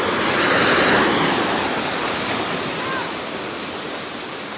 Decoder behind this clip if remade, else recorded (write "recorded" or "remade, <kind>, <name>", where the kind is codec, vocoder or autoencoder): recorded